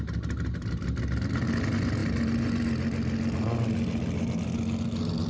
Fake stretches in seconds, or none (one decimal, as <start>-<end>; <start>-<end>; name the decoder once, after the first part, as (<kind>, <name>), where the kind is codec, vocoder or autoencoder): none